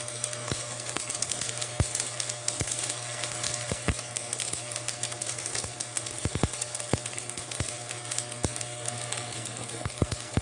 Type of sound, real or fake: fake